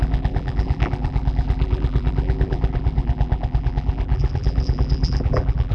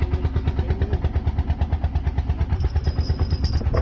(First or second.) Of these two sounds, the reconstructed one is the first